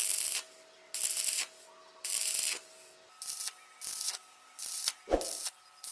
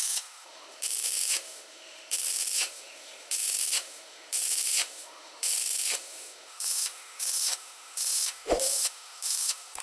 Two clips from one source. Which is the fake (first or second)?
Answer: second